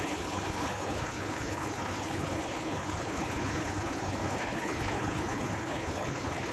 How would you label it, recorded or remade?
remade